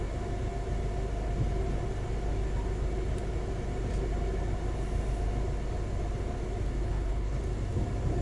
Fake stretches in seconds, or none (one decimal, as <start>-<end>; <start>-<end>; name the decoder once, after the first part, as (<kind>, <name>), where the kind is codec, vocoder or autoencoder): 6.9-7.4 (codec, HILCodec)